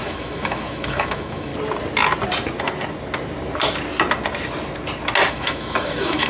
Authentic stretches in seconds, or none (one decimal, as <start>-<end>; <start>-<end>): 1.5-5.3